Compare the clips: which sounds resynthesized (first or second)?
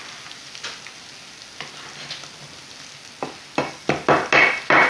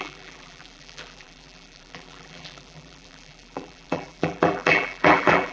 second